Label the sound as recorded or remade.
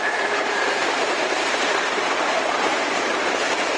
remade